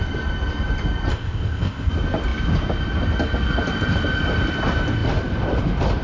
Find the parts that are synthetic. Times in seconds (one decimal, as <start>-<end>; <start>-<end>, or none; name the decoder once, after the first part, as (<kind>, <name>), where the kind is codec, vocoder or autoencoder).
1.1-1.9 (codec, ZipCodec)